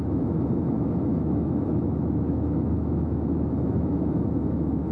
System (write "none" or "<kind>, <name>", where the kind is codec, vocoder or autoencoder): autoencoder, DAC-VAE